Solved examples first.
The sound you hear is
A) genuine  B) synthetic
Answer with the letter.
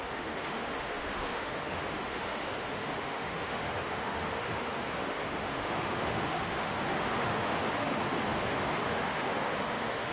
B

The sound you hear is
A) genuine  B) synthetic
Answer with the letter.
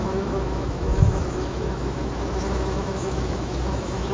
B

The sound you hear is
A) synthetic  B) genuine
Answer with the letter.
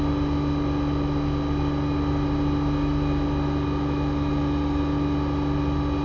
B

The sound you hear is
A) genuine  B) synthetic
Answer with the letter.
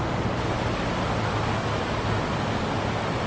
A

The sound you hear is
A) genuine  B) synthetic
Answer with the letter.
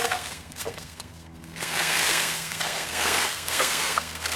B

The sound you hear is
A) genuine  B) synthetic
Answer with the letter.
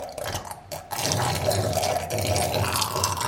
A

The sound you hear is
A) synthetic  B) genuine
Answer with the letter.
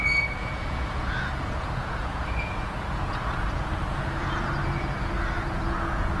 A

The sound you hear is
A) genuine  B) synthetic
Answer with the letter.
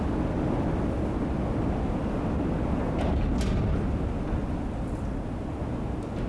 A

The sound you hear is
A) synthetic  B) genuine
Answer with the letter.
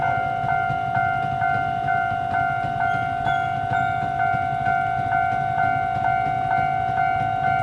B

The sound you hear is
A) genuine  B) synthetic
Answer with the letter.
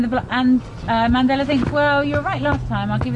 A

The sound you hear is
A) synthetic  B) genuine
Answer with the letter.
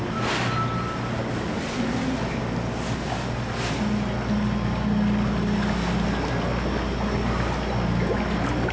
B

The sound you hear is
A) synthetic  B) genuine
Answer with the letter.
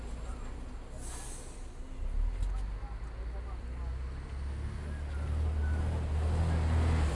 B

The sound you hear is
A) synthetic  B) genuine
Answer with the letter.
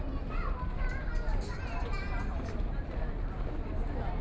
B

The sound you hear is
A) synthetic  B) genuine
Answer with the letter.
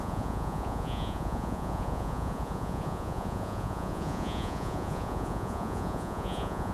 A